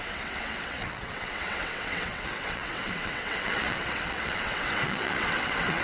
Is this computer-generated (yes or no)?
yes